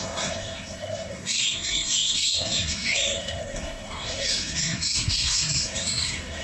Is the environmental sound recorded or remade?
remade